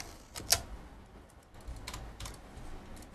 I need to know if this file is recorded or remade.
recorded